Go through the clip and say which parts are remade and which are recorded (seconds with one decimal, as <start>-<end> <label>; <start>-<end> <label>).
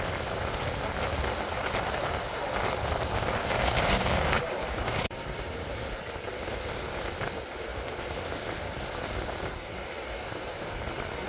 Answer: 0.0-3.4 recorded; 3.4-5.0 remade; 5.0-11.3 recorded